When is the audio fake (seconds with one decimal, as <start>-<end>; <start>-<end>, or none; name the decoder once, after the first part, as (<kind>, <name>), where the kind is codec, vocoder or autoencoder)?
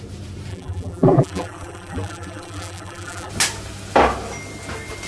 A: 0.5-3.3 (vocoder, BigVGAN v2)